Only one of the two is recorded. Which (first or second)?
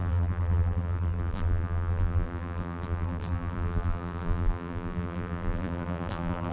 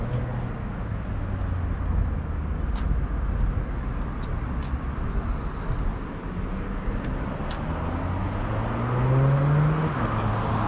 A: second